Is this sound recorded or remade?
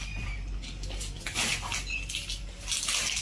recorded